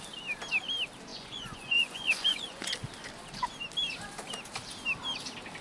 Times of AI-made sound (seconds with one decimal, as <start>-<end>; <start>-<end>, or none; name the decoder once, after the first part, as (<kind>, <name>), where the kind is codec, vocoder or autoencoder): 1.1-2.7 (vocoder, Vocos)